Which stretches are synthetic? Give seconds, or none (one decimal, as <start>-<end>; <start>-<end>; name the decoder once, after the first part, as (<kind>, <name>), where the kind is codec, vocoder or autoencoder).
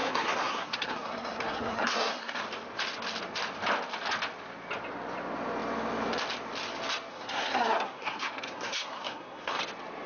0.0-2.4 (codec, SNAC); 7.1-9.5